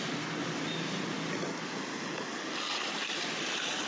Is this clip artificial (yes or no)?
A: no